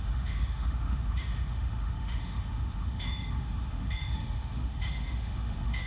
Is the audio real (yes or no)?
no